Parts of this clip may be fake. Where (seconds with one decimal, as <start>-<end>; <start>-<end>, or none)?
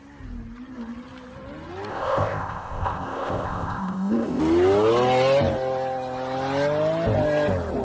1.9-4.4